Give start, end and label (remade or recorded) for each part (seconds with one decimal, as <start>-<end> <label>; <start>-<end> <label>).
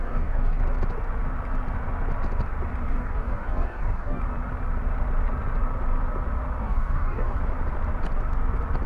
0.0-0.6 remade; 0.6-2.9 recorded; 2.9-4.2 remade; 4.2-6.6 recorded; 6.6-7.4 remade; 7.4-8.9 recorded